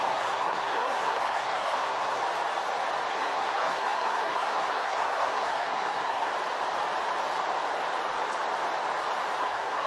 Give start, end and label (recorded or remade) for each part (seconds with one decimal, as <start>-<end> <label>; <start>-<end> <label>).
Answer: 0.0-2.2 remade; 2.2-3.1 recorded; 3.1-6.3 remade; 6.3-9.4 recorded; 9.4-9.9 remade